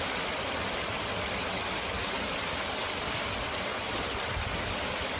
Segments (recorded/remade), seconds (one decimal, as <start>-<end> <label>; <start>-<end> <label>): 0.0-5.2 recorded